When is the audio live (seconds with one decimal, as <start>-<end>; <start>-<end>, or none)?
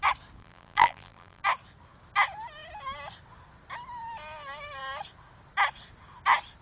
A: 0.0-0.4; 1.4-6.6